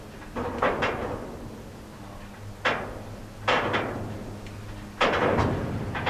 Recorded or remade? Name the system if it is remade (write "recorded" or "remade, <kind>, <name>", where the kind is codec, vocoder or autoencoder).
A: recorded